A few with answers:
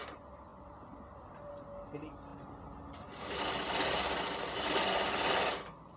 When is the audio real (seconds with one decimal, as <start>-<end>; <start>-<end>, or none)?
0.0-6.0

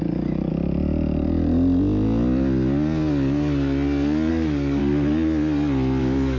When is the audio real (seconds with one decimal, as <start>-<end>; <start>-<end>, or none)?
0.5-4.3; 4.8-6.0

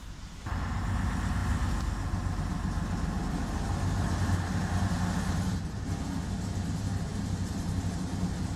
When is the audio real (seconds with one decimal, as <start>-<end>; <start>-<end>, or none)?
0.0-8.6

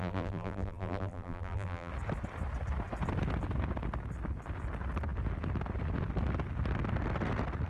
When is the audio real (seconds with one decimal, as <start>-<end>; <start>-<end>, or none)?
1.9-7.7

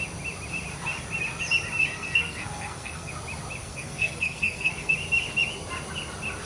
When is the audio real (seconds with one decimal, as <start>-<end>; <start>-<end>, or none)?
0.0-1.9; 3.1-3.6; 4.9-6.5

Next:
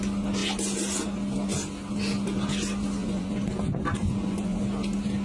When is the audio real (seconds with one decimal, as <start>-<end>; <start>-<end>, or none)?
0.0-3.0; 3.5-4.0; 4.6-5.2

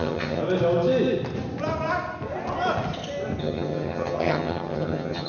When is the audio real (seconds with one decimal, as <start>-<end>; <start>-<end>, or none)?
0.4-3.4

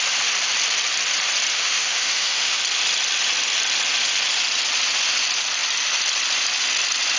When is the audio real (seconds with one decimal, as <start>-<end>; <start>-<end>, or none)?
0.0-1.5; 2.6-7.2